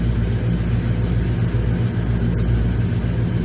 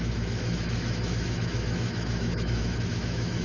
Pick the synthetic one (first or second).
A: second